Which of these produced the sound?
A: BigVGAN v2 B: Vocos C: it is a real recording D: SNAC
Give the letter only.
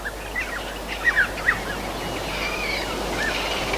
C